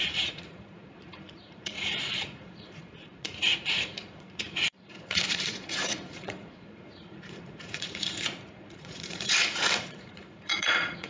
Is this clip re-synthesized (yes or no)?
yes